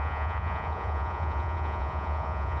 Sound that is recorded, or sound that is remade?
remade